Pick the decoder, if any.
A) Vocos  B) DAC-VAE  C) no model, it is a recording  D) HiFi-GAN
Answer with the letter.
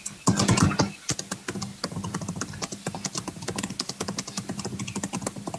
C